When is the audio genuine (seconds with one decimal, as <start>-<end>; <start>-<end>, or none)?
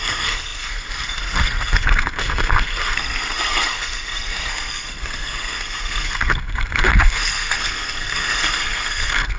none